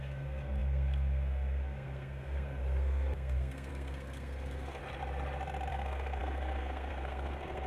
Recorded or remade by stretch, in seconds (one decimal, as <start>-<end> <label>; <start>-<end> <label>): 0.0-4.8 remade; 4.8-5.7 recorded; 5.7-7.7 remade

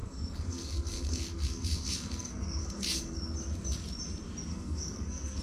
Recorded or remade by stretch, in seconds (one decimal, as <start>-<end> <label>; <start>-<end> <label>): 0.0-3.2 remade; 3.2-4.5 recorded; 4.5-5.4 remade